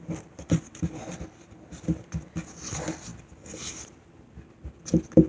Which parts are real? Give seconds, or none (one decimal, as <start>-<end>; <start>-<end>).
0.0-5.3